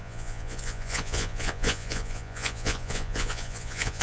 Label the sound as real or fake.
fake